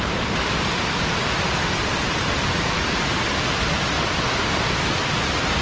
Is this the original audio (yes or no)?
yes